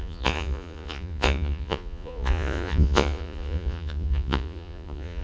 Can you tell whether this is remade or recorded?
remade